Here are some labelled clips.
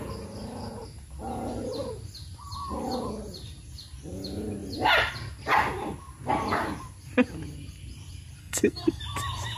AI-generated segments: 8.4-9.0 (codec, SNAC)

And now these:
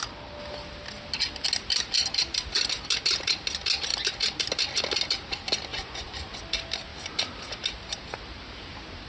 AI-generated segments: 5.7-6.4 (vocoder, Vocos)

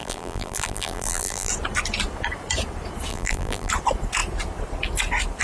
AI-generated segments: 0.0-1.5 (vocoder, BigVGAN v2); 3.1-3.7

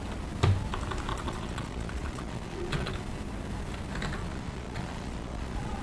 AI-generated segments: 1.1-2.9 (vocoder, Vocos); 4.2-5.8